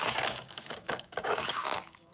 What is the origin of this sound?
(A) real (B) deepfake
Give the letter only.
B